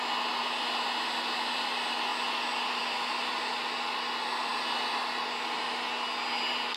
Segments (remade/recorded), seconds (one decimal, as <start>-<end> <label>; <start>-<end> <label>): 0.0-6.8 recorded